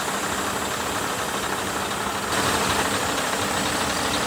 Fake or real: real